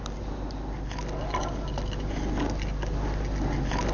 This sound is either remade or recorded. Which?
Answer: recorded